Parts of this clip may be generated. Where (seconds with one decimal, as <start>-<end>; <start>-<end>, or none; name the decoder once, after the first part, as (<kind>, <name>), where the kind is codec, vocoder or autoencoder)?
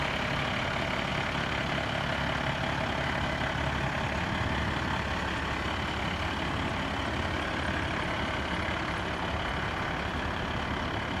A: none